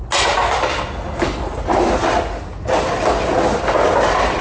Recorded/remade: recorded